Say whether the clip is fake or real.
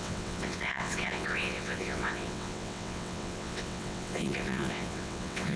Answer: fake